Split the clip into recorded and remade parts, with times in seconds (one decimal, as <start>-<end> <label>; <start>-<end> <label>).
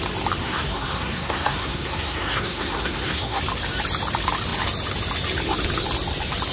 0.0-0.4 recorded; 0.4-3.4 remade; 3.4-6.5 recorded